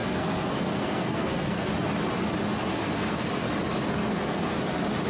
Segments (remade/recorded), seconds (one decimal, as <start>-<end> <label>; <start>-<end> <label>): 0.0-1.7 remade; 1.7-2.7 recorded; 2.7-3.3 remade; 3.3-4.0 recorded; 4.0-4.6 remade; 4.6-5.1 recorded

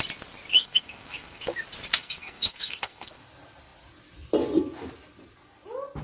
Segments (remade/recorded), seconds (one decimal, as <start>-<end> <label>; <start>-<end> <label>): 0.0-0.5 recorded; 0.5-1.4 remade; 1.4-1.9 recorded; 1.9-3.2 remade; 3.2-6.0 recorded

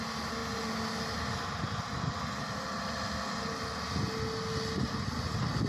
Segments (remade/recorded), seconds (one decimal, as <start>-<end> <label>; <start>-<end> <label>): 0.0-5.7 recorded

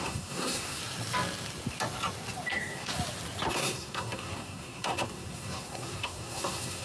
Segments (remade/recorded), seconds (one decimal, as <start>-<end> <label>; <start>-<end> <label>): 0.0-0.8 remade; 0.8-2.5 recorded; 2.5-2.9 remade; 2.9-3.5 recorded; 3.5-6.8 remade

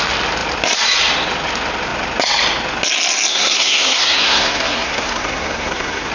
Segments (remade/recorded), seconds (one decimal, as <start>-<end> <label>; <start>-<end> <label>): 0.0-3.3 recorded; 3.3-6.1 remade